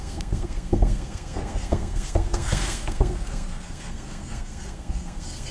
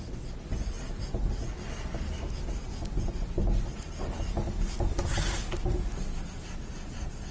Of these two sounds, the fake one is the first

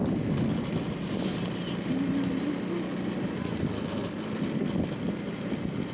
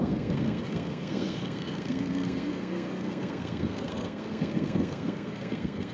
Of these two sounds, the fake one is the second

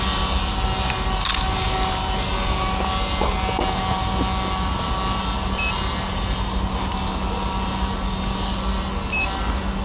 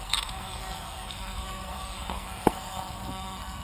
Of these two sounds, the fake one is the second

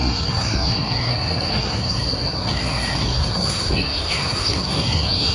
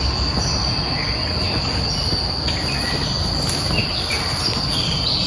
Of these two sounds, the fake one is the first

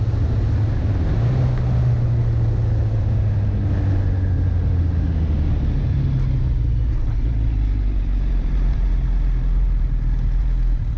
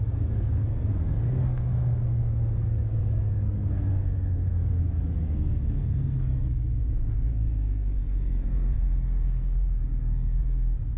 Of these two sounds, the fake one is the second